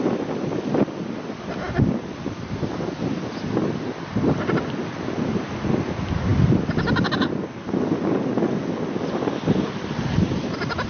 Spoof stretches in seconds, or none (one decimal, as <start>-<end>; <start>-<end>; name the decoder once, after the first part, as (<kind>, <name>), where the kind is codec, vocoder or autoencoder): none